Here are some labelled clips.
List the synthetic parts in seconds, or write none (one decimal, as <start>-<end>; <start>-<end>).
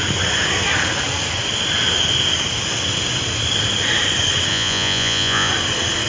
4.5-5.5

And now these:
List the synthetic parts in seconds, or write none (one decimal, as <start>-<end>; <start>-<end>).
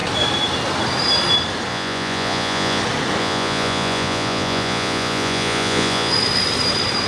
1.7-2.8; 3.2-6.1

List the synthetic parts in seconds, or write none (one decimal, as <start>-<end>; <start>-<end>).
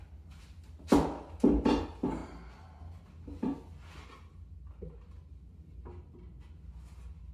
none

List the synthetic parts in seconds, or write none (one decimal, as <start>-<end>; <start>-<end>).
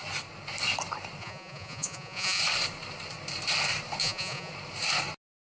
1.2-2.4; 4.0-4.5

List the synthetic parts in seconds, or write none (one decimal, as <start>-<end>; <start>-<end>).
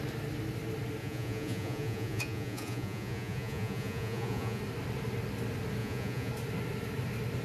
1.0-4.6; 5.8-6.3